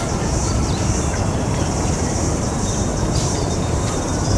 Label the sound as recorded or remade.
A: remade